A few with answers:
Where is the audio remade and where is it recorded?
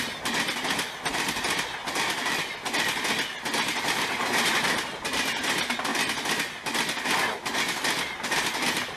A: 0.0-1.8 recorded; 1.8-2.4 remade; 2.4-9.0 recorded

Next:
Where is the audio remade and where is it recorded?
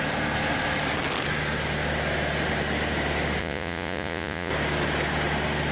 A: 0.0-3.4 recorded; 3.4-4.5 remade; 4.5-5.7 recorded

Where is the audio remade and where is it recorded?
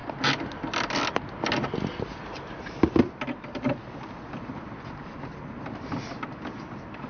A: 0.0-7.1 recorded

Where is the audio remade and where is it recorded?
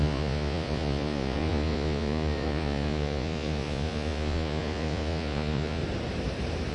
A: 0.0-5.8 remade; 5.8-6.7 recorded